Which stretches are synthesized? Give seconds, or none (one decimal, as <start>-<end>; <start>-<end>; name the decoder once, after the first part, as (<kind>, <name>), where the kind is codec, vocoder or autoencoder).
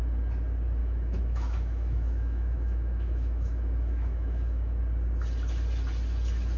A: 0.8-4.8 (autoencoder, DAC-VAE)